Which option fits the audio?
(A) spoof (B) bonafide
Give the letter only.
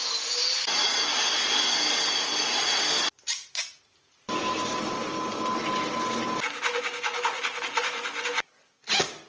B